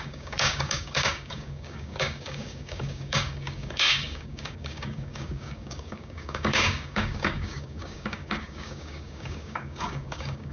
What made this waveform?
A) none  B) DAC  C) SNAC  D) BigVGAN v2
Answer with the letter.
B